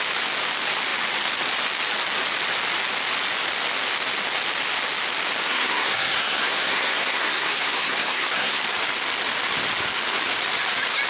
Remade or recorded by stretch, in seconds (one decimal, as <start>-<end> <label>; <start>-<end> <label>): 0.0-5.5 recorded; 5.5-8.6 remade; 8.6-11.1 recorded